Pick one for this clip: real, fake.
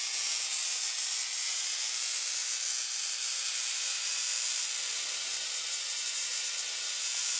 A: real